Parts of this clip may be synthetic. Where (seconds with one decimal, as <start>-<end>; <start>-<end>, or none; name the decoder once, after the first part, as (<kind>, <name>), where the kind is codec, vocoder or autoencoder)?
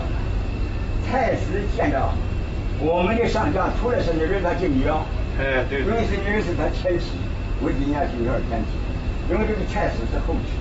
none